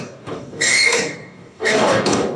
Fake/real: fake